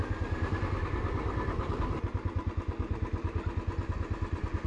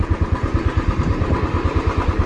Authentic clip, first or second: first